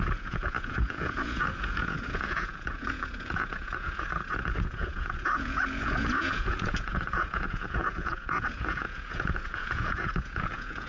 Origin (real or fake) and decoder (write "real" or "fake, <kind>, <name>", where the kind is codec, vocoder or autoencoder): fake, vocoder, Vocos